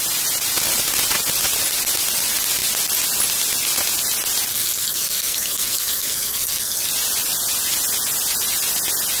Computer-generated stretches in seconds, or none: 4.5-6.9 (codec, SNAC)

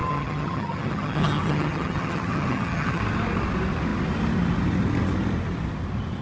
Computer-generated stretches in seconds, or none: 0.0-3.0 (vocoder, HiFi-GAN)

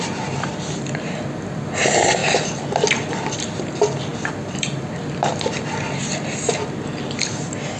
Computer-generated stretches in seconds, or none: 2.2-3.4 (vocoder, BigVGAN v2); 4.1-5.3

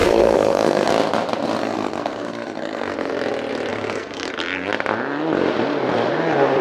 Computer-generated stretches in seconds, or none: 0.0-0.9 (codec, SNAC); 1.6-3.1; 3.7-4.3

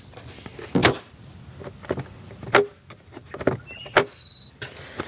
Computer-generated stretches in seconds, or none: none